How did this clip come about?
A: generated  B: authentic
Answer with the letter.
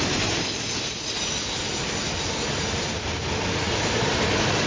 B